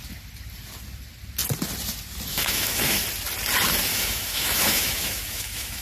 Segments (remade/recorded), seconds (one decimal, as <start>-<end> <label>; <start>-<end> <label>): 0.0-2.3 recorded; 2.3-3.0 remade; 3.0-3.9 recorded; 3.9-5.8 remade